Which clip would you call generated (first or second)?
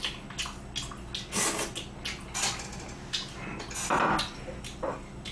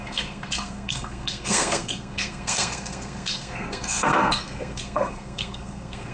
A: second